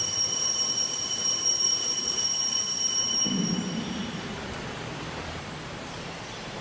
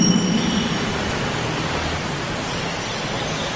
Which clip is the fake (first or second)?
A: first